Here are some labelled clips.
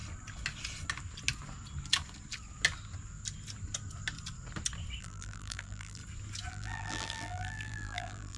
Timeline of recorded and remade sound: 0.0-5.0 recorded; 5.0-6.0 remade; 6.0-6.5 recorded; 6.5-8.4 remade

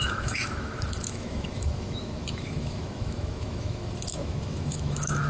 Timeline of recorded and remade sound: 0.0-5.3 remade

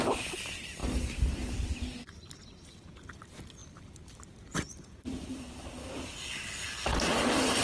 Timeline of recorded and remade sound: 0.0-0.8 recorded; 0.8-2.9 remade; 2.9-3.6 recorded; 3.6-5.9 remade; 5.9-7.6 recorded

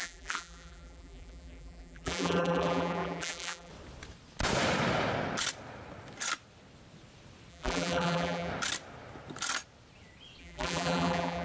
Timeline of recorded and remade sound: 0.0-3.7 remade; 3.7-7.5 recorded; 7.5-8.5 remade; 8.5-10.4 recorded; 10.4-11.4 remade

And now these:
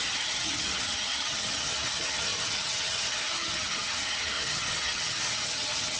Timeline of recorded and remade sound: 0.0-6.0 remade

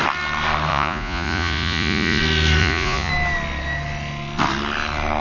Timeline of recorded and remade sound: 0.0-0.7 recorded; 0.7-2.2 remade; 2.2-2.6 recorded; 2.6-3.1 remade; 3.1-5.2 recorded

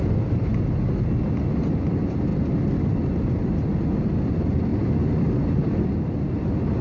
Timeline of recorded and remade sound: 0.0-0.5 remade; 0.5-1.9 recorded; 1.9-2.3 remade; 2.3-3.8 recorded; 3.8-4.7 remade; 4.7-5.2 recorded; 5.2-6.8 remade